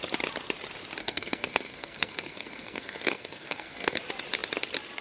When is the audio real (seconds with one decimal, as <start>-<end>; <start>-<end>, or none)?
0.0-1.0; 4.0-5.0